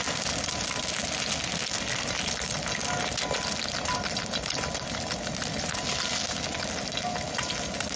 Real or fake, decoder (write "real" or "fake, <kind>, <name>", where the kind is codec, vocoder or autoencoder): real